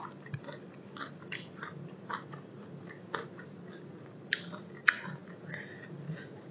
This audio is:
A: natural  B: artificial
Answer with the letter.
A